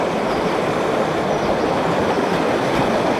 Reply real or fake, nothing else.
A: real